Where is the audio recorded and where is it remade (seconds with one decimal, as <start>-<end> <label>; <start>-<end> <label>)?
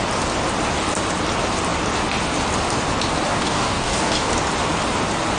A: 0.0-3.3 recorded; 3.3-4.3 remade; 4.3-5.4 recorded